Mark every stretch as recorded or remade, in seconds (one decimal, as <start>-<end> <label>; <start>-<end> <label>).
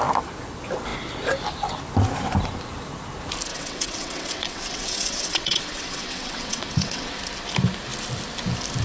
0.0-3.5 recorded; 3.5-7.2 remade; 7.2-8.8 recorded